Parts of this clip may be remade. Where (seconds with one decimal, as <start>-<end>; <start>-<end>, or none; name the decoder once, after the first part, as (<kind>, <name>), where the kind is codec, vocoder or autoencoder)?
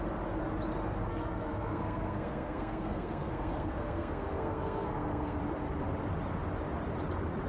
1.1-5.4 (codec, SNAC)